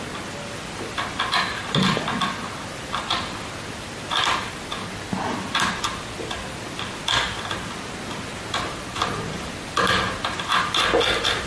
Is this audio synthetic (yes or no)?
no